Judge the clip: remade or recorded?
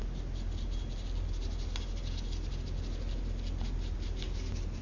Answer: recorded